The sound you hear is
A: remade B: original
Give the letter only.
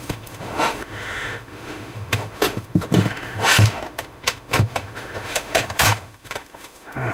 A